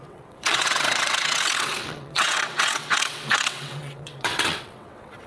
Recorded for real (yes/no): no